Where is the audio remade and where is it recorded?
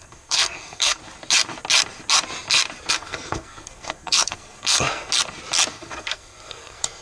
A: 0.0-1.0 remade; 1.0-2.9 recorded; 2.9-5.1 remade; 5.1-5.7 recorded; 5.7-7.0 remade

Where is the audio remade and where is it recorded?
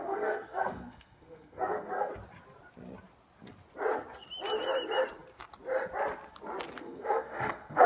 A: 0.0-2.1 remade; 2.1-6.8 recorded; 6.8-7.9 remade